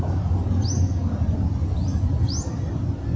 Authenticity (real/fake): real